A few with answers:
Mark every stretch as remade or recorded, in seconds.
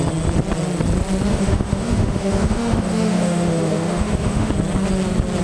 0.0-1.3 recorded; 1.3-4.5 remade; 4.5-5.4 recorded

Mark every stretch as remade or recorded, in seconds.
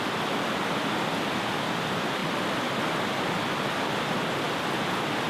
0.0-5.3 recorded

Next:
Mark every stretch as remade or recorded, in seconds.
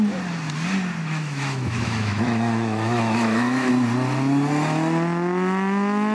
0.0-1.0 recorded; 1.0-3.7 remade; 3.7-6.1 recorded